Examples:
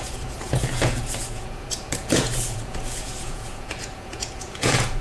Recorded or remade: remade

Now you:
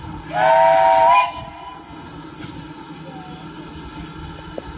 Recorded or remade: recorded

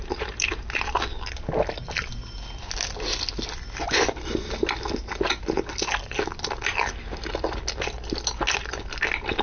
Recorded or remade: recorded